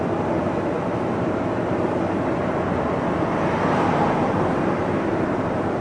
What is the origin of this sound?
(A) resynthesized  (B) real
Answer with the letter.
B